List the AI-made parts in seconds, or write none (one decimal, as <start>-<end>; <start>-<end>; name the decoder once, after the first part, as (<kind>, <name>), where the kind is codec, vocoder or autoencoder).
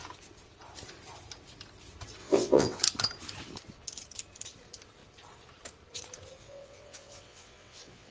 2.2-2.8 (vocoder, WaveNeXt); 6.4-8.1